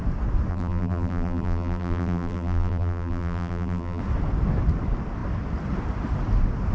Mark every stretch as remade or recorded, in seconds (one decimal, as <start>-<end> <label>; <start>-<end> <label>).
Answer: 0.0-0.5 recorded; 0.5-4.0 remade; 4.0-6.7 recorded